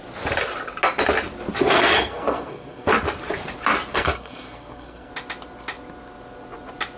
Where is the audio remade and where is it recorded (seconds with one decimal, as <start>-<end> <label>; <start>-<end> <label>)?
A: 0.0-1.6 recorded; 1.6-2.9 remade; 2.9-3.9 recorded; 3.9-5.1 remade; 5.1-7.0 recorded